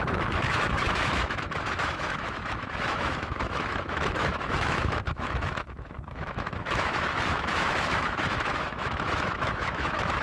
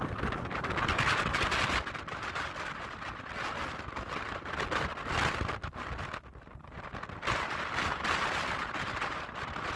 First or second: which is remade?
first